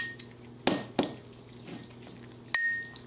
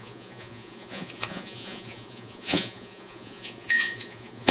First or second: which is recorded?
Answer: first